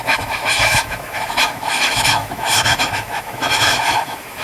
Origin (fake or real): fake